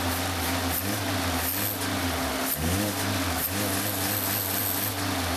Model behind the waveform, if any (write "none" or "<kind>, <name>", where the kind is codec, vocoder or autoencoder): none